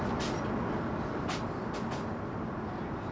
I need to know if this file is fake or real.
real